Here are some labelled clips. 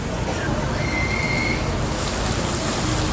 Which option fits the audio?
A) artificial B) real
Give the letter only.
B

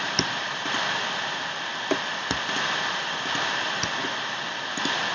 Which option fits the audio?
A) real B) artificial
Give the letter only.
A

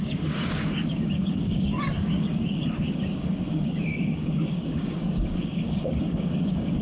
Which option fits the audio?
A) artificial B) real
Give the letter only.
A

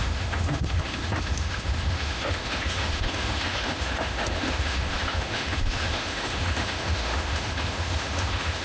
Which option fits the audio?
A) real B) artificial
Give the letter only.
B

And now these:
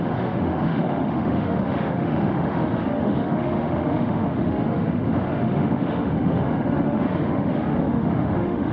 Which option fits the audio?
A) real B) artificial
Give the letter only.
B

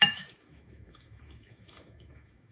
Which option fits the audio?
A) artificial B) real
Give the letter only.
A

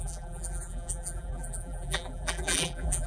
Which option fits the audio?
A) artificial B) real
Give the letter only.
A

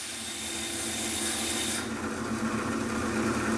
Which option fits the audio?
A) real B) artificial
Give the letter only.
A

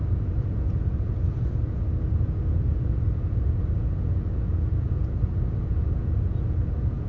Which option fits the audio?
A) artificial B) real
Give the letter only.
A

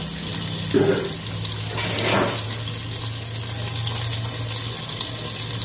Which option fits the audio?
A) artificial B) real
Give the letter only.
B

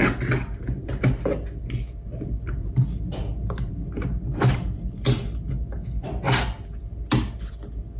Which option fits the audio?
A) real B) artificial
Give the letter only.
A